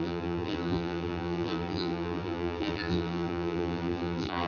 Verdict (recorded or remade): remade